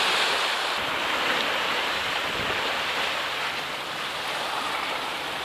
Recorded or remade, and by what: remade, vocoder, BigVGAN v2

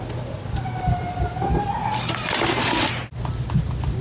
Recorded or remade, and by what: recorded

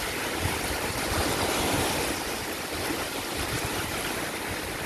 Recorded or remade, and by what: recorded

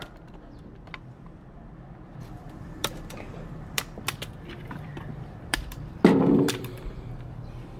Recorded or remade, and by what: remade, vocoder, BigVGAN v2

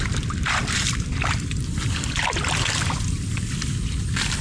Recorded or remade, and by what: remade, vocoder, BigVGAN v2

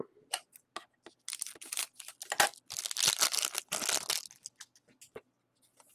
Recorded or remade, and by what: recorded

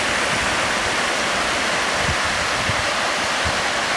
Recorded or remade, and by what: recorded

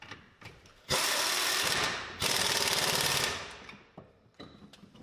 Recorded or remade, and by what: remade, vocoder, BigVGAN v2